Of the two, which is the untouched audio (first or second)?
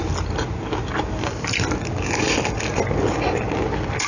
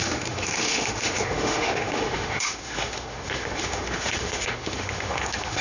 first